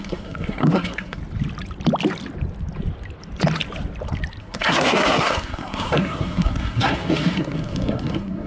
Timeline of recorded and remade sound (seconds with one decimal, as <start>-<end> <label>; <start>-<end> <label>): 0.0-1.2 remade; 1.2-4.4 recorded; 4.4-8.5 remade